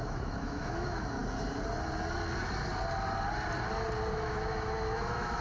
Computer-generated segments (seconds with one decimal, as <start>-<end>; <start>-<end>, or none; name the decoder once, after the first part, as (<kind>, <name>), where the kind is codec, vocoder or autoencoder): 0.0-1.2 (autoencoder, DAC-VAE); 4.1-5.4